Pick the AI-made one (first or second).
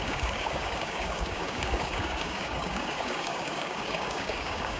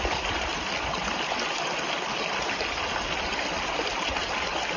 first